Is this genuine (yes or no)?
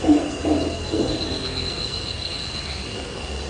no